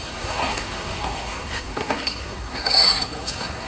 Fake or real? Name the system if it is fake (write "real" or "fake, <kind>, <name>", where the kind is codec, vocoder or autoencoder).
fake, codec, SNAC